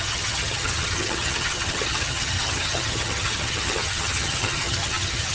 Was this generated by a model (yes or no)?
yes